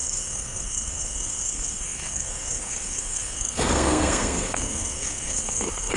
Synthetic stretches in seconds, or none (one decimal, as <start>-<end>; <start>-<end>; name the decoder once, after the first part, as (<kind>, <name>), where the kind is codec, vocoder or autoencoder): 0.0-6.0 (codec, SNAC)